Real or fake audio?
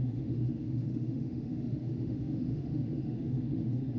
fake